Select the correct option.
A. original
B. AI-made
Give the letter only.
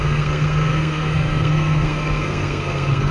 B